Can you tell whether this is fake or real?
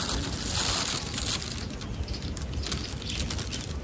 real